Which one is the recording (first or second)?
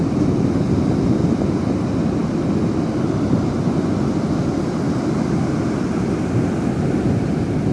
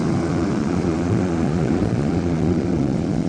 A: first